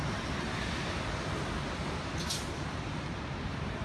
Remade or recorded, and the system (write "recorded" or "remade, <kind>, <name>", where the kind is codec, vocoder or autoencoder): recorded